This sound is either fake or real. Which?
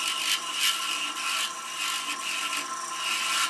real